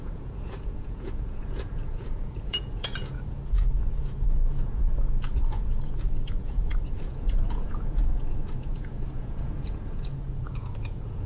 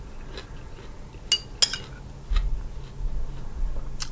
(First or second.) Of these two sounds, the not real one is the first